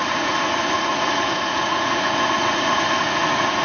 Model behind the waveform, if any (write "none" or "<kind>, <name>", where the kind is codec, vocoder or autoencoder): vocoder, Vocos